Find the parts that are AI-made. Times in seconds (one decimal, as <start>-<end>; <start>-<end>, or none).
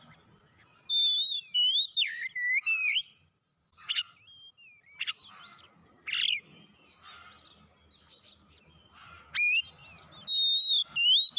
none